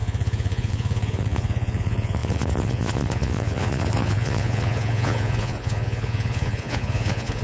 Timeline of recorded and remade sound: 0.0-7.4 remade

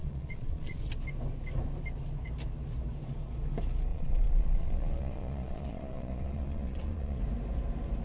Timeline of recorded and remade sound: 0.0-0.9 remade; 0.9-3.9 recorded; 3.9-7.2 remade; 7.2-8.0 recorded